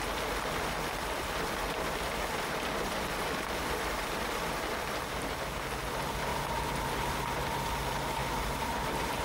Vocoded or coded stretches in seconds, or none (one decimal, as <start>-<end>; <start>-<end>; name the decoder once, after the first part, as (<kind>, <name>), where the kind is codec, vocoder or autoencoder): 6.3-7.3 (vocoder, BigVGAN v2); 8.2-9.2